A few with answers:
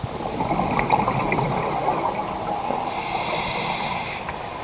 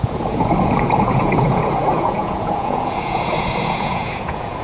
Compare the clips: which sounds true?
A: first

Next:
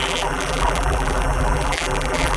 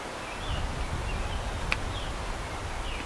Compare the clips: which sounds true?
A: second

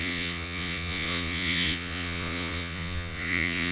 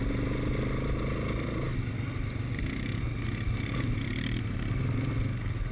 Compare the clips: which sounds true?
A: second